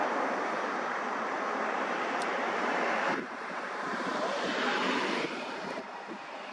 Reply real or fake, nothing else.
fake